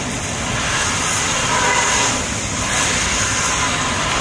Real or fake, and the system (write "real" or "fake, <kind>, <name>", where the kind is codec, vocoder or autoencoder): real